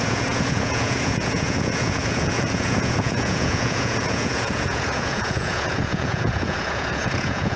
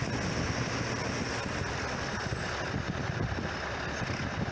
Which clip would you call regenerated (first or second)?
first